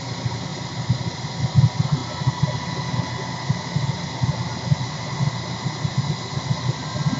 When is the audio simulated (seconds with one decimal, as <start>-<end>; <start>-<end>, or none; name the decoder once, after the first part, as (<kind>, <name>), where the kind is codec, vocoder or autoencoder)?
none